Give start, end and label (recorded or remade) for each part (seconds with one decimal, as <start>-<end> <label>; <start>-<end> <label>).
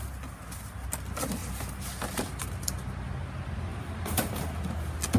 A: 0.0-3.7 recorded; 3.7-4.4 remade; 4.4-5.2 recorded